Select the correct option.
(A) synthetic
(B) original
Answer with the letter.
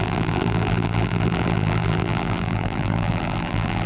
A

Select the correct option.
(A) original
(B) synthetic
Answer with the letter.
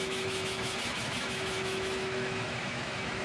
B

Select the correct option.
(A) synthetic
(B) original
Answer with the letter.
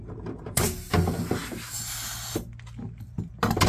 B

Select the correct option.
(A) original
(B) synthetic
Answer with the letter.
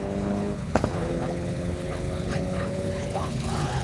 B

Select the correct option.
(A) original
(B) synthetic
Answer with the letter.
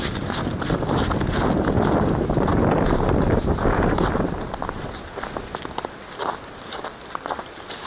A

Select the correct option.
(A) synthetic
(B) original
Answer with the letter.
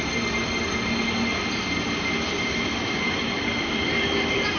B